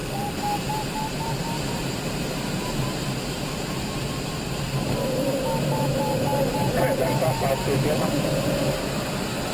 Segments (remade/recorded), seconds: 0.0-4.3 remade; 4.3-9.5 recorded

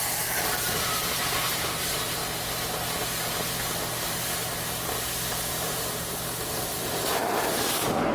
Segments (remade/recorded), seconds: 0.0-2.2 remade; 2.2-4.0 recorded; 4.0-4.4 remade; 4.4-5.5 recorded; 5.5-8.1 remade